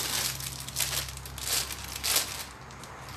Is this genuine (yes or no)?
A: yes